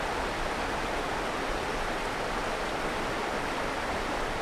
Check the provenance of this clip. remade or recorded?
remade